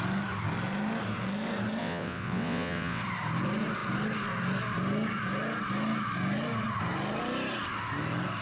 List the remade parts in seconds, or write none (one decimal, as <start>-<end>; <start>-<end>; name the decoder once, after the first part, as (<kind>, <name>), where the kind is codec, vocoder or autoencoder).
1.8-3.0 (vocoder, WaveNeXt)